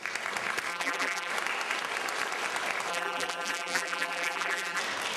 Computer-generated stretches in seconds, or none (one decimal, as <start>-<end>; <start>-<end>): 0.7-1.3; 2.9-4.8